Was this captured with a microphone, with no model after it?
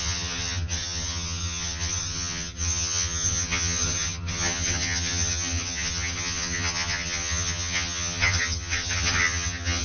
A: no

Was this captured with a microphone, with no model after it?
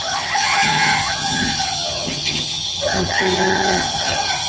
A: no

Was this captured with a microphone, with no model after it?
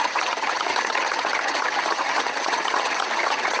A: no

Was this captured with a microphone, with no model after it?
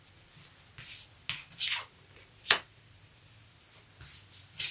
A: yes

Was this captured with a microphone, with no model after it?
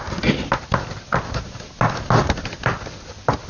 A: yes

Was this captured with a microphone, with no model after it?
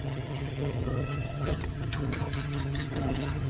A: no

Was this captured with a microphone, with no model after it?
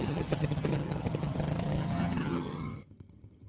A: no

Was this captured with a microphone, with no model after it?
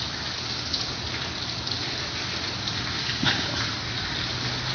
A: yes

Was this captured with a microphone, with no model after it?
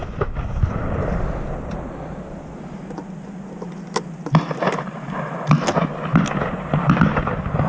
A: yes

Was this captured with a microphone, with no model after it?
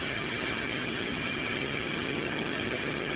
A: no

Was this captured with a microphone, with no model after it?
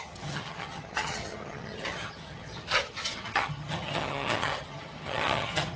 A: no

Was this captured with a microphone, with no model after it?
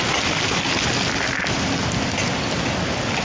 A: yes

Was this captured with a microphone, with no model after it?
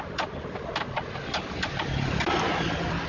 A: yes